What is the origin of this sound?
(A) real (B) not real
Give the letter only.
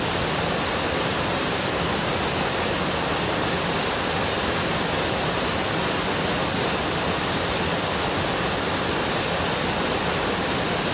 A